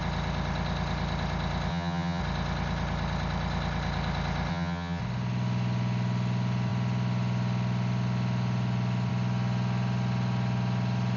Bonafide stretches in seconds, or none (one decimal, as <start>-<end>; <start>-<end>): 0.0-1.7; 2.2-4.5; 5.0-11.2